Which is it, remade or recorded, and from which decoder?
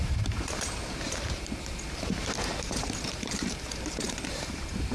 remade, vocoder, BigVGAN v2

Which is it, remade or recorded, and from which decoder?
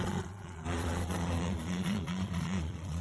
remade, vocoder, Vocos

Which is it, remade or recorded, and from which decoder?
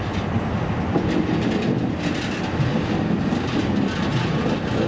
recorded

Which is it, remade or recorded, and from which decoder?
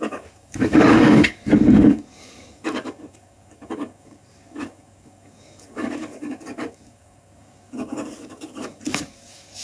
remade, codec, DAC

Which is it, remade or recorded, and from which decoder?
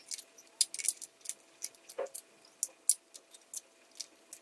recorded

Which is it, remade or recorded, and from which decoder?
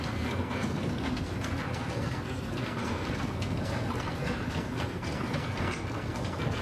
remade, codec, SNAC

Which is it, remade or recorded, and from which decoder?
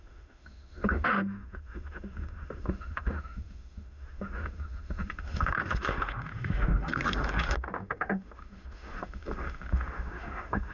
remade, autoencoder, DAC-VAE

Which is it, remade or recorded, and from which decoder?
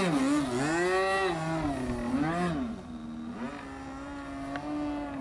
recorded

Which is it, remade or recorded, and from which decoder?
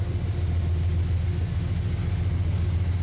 recorded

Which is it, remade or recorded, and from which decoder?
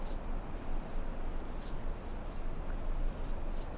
recorded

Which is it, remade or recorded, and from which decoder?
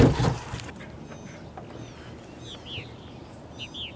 recorded